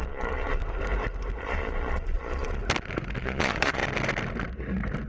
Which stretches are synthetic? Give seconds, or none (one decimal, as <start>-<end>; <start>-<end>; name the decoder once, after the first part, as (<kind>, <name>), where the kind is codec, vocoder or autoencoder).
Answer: 0.0-0.6 (vocoder, Vocos); 1.4-2.6; 3.2-3.8